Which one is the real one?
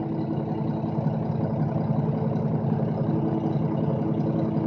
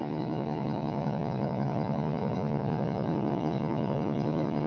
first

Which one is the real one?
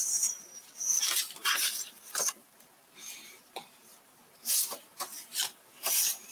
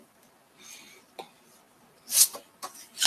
second